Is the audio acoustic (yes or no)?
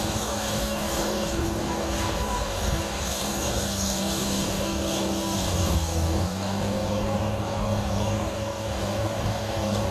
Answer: no